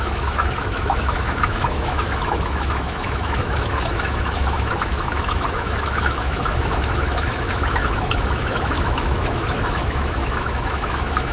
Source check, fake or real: fake